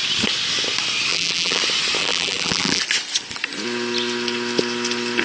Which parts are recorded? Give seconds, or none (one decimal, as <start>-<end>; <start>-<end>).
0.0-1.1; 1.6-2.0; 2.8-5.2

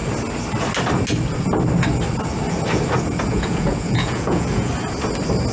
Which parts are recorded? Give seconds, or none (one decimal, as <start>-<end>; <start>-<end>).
0.0-3.2; 4.7-5.5

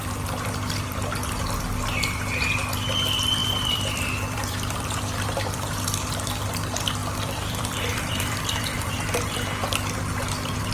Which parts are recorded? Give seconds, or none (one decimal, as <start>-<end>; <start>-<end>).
0.0-3.4; 5.6-7.0; 9.0-10.7